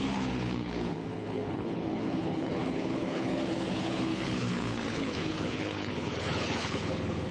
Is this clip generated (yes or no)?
yes